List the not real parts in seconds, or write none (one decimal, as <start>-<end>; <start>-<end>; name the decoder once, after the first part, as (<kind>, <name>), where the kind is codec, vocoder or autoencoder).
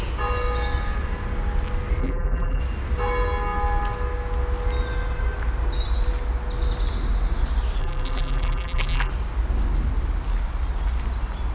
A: 2.0-2.6 (vocoder, BigVGAN v2); 7.8-9.1